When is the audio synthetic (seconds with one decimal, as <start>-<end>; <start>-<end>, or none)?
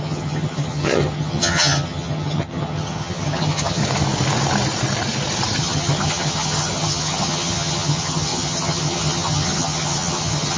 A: 0.0-3.8; 5.6-10.6